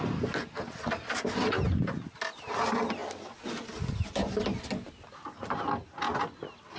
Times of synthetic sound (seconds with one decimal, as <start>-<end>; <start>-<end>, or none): none